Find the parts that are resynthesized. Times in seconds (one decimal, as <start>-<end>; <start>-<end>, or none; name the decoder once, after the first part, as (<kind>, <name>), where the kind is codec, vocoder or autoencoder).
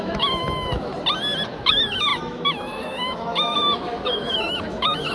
0.0-0.9 (autoencoder, DAC-VAE); 1.5-5.1